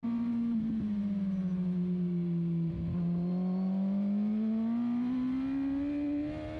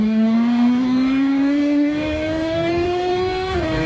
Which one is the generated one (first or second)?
second